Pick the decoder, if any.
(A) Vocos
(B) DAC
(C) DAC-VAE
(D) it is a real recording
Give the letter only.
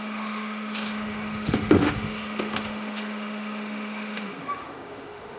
C